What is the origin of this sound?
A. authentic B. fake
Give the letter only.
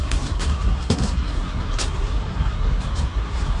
B